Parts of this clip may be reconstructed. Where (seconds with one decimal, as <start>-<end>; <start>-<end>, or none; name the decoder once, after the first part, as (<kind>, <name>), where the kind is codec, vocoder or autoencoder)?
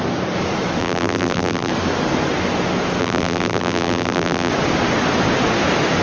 0.8-1.7 (vocoder, BigVGAN v2); 3.0-4.5